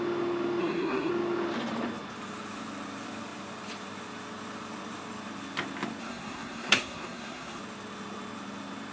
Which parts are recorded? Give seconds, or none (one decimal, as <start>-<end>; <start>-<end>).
0.0-0.6; 1.1-6.0; 7.6-8.9